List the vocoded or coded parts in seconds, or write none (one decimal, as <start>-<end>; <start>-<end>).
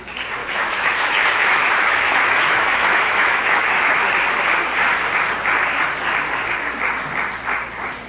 0.4-4.0